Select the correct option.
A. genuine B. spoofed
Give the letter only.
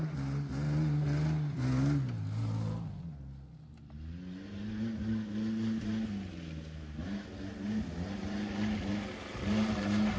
A